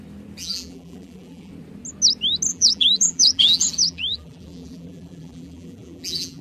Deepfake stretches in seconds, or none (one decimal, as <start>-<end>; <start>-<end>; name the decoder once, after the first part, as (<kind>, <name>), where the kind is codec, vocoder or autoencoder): 0.4-1.5 (vocoder, BigVGAN v2); 2.5-6.4